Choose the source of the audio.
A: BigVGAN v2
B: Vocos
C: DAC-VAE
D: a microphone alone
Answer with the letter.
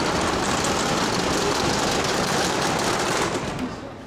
D